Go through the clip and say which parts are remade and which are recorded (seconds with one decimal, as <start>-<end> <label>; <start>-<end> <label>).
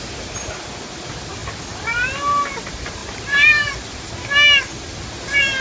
0.0-5.6 recorded